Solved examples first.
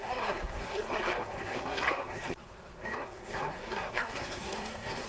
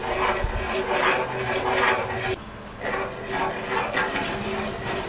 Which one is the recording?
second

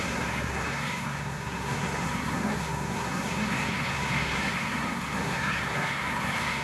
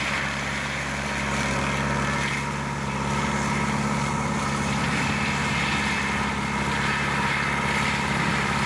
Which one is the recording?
second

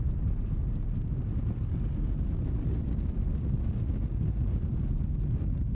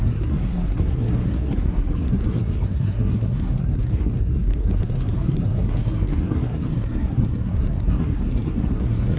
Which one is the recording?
first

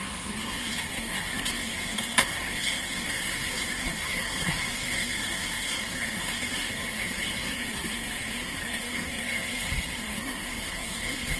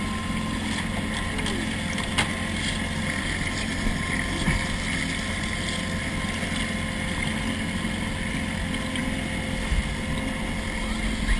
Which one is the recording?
second